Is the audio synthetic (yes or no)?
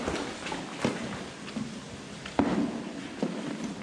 no